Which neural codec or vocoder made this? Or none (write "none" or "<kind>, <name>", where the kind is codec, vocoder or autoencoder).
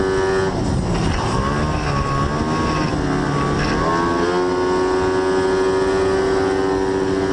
none